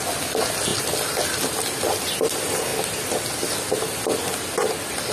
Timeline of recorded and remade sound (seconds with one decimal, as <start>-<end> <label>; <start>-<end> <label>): 0.0-5.1 recorded